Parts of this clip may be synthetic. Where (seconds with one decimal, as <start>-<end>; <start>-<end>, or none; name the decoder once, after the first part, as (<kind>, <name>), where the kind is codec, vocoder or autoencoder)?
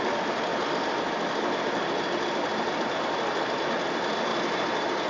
0.5-3.6 (vocoder, BigVGAN v2); 4.3-5.1